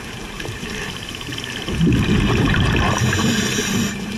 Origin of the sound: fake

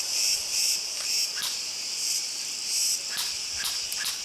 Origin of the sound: real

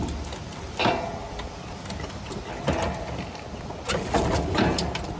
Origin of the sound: real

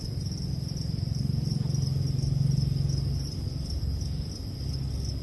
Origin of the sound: real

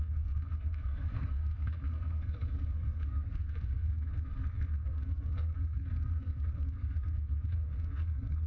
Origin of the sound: fake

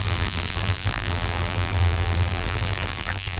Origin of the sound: fake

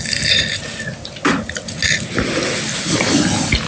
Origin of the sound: real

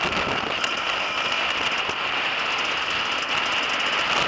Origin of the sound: real